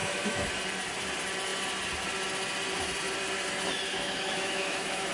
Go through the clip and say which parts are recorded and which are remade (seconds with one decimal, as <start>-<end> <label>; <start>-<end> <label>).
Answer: 0.0-0.5 remade; 0.5-3.9 recorded; 3.9-5.1 remade